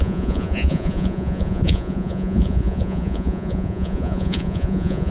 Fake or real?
fake